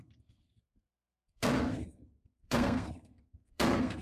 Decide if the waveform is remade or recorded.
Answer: remade